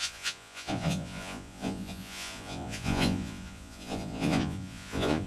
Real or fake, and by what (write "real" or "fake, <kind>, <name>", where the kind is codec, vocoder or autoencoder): fake, vocoder, Vocos